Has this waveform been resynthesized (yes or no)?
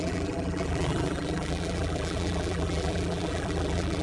yes